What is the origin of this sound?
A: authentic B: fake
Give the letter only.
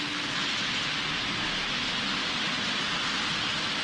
A